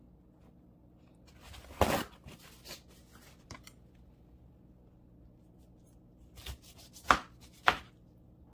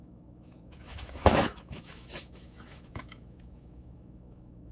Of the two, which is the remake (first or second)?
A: second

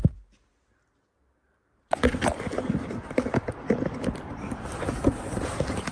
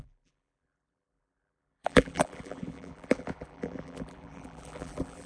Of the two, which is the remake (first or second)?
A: second